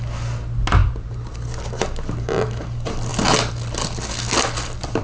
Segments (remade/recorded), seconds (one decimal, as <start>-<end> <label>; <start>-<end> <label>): 0.0-5.0 recorded